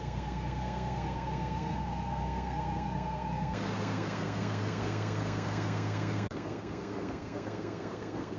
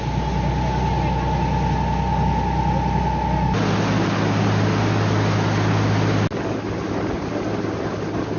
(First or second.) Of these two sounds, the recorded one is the second